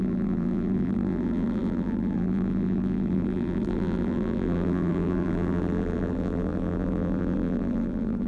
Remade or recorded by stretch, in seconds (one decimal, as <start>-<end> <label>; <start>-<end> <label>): 0.0-8.3 remade